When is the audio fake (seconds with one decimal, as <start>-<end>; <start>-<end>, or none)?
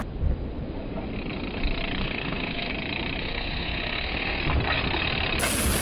2.0-2.7; 3.2-4.4